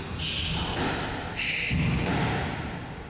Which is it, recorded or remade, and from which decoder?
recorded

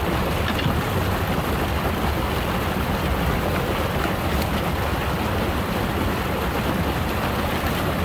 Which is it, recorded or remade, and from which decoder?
recorded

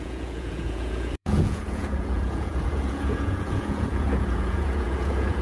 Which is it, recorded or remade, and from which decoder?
remade, vocoder, Vocos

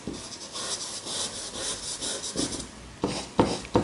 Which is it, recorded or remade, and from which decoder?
recorded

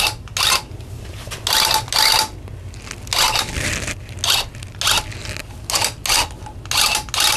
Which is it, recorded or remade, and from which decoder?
recorded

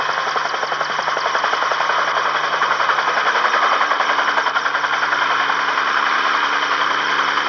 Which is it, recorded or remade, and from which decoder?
recorded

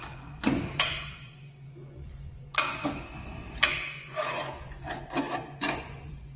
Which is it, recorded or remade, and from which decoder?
remade, vocoder, Vocos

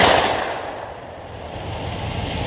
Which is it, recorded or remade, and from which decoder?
remade, vocoder, BigVGAN v2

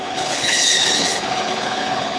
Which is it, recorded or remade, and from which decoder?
remade, codec, HILCodec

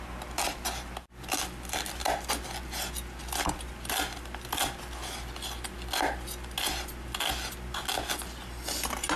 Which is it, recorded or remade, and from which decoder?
recorded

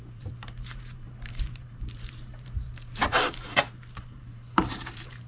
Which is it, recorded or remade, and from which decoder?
remade, vocoder, BigVGAN v2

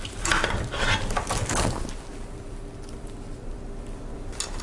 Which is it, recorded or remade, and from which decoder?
recorded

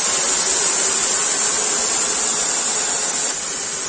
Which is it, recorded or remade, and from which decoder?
recorded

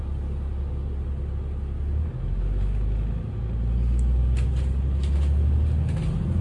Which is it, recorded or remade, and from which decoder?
recorded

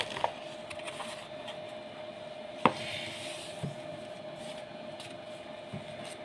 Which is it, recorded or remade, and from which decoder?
recorded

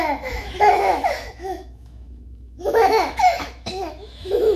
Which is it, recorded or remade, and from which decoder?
remade, autoencoder, DAC-VAE